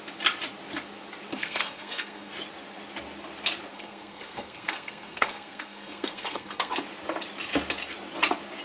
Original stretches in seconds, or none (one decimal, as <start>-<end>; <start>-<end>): 0.0-1.3; 2.3-3.7; 6.7-8.6